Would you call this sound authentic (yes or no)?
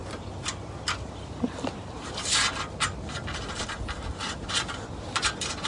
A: yes